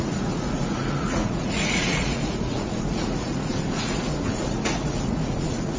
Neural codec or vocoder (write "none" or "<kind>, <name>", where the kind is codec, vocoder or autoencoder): vocoder, Vocos